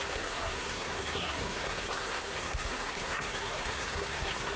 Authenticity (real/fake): fake